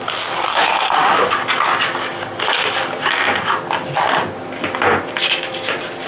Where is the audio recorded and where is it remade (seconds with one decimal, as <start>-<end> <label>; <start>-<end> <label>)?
0.0-0.5 recorded; 0.5-1.3 remade; 1.3-6.1 recorded

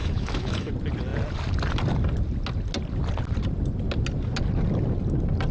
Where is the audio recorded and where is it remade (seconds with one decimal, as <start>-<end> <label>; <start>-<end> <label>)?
0.0-0.7 remade; 0.7-5.5 recorded

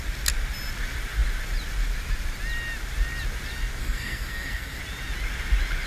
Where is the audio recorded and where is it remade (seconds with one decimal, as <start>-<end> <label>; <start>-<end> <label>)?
0.0-3.8 recorded; 3.8-4.8 remade; 4.8-5.9 recorded

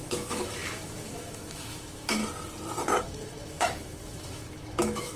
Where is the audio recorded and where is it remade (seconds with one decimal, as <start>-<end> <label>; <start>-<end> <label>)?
0.0-2.2 remade; 2.2-3.0 recorded; 3.0-5.2 remade

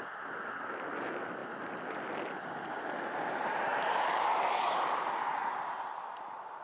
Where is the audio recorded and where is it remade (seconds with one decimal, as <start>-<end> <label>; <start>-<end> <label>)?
0.0-3.7 recorded; 3.7-4.7 remade; 4.7-6.6 recorded

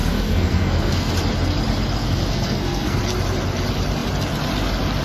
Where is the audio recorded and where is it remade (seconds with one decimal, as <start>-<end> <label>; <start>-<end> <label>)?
0.0-1.1 remade; 1.1-2.0 recorded; 2.0-3.0 remade; 3.0-5.0 recorded

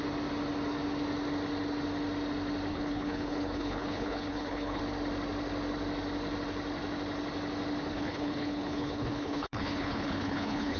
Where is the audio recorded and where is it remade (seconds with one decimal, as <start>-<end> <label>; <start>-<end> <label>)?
0.0-2.7 recorded; 2.7-4.8 remade; 4.8-7.9 recorded; 7.9-10.8 remade

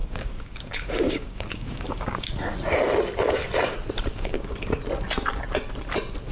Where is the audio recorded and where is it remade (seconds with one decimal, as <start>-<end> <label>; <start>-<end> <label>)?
0.0-2.3 remade; 2.3-4.1 recorded; 4.1-4.8 remade; 4.8-6.3 recorded